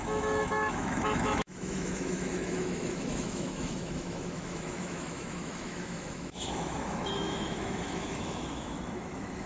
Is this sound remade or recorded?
remade